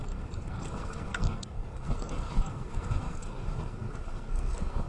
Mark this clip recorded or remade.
remade